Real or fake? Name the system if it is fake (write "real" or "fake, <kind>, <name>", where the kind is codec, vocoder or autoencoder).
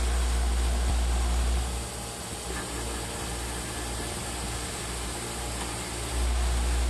real